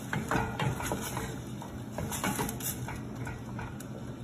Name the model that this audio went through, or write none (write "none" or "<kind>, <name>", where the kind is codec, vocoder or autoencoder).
none